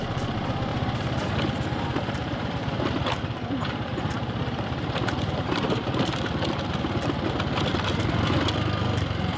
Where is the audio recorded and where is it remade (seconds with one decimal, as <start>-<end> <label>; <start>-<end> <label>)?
0.0-0.7 recorded; 0.7-1.3 remade; 1.3-2.2 recorded; 2.2-6.3 remade; 6.3-9.4 recorded